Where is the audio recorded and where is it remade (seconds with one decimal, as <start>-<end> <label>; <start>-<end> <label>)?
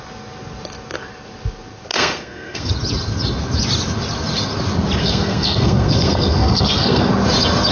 0.0-1.9 recorded; 1.9-2.7 remade; 2.7-5.0 recorded; 5.0-7.1 remade; 7.1-7.7 recorded